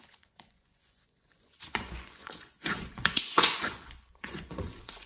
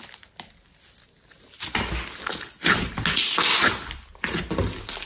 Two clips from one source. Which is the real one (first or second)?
second